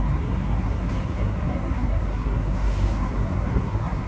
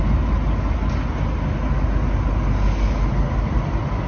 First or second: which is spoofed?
first